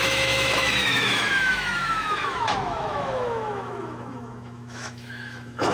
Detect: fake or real fake